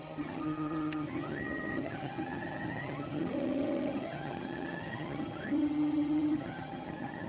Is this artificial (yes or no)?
yes